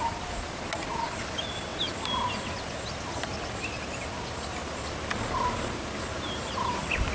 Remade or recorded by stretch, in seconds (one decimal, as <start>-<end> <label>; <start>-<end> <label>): 0.0-7.1 recorded